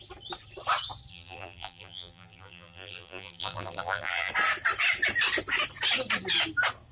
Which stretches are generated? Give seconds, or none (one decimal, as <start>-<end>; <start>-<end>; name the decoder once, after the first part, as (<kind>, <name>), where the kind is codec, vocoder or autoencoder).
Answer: 1.1-4.3 (vocoder, BigVGAN v2)